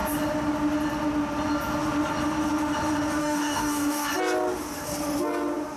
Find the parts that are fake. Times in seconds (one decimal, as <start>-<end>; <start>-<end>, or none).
3.2-4.1